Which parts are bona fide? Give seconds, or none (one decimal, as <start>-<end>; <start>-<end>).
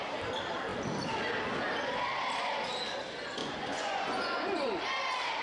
0.0-3.4; 4.8-5.4